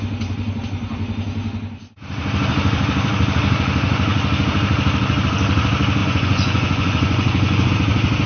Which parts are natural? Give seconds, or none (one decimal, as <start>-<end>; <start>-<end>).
0.0-6.0; 7.7-8.3